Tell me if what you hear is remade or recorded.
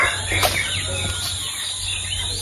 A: recorded